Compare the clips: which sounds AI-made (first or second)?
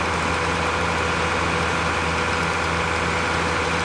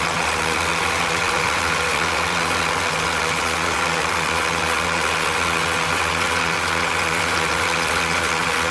second